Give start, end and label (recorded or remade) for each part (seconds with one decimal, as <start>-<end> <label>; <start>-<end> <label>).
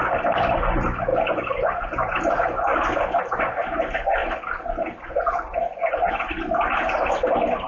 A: 0.0-7.7 recorded